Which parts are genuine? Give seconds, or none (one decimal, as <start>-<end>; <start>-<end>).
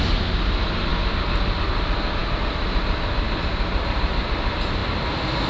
0.0-5.5